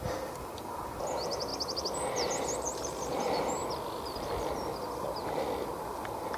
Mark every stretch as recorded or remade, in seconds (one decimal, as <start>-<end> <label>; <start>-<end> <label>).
0.0-1.5 remade; 1.5-2.3 recorded; 2.3-3.6 remade; 3.6-4.4 recorded; 4.4-6.4 remade